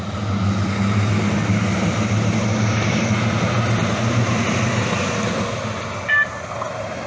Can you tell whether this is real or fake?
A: real